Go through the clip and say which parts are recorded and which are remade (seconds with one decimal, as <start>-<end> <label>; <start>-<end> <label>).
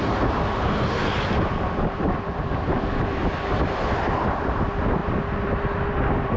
0.0-6.4 recorded